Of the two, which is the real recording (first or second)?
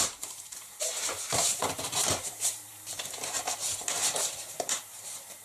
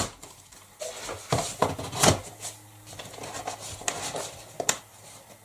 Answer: second